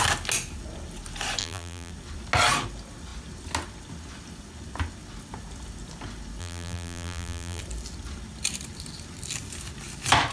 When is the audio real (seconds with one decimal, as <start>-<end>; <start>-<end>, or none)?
0.0-1.4; 1.9-6.4; 7.6-10.3